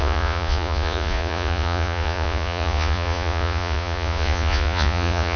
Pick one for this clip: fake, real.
fake